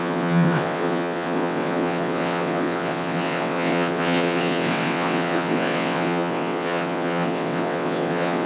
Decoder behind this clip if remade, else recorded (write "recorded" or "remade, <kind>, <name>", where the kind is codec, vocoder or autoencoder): remade, vocoder, WaveNeXt